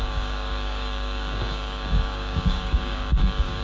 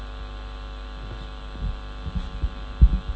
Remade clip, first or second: first